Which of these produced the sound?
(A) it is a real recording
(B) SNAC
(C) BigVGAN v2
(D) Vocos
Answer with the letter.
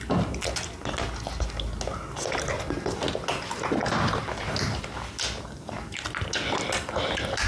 A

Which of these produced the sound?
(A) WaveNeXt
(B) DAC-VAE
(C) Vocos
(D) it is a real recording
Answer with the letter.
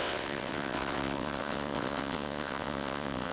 A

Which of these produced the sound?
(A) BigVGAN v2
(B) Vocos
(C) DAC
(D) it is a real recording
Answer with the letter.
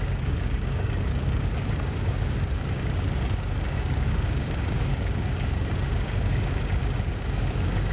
C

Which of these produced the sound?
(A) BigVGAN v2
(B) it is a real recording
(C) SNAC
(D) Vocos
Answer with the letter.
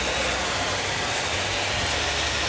B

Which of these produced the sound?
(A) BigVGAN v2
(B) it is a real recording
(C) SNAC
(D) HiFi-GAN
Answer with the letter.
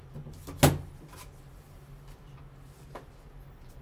B